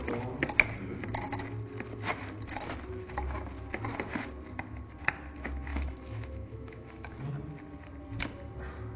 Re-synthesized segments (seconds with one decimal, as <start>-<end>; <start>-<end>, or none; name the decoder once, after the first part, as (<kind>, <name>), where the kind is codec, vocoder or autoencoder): 5.7-7.2 (autoencoder, DAC-VAE)